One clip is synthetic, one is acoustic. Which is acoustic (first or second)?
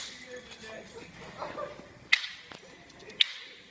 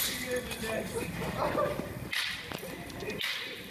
first